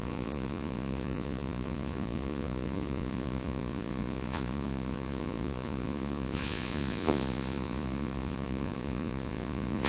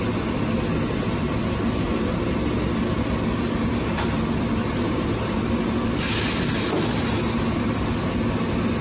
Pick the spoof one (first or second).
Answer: first